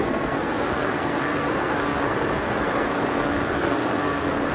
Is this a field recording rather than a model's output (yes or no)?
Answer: no